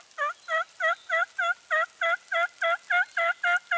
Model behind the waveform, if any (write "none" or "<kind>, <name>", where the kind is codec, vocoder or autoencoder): none